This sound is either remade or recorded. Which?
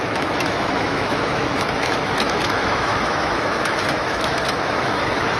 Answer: remade